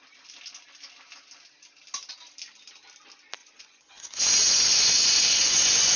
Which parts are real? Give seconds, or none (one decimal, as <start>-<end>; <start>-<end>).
0.0-3.4